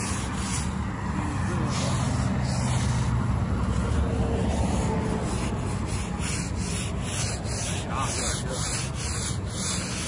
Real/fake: real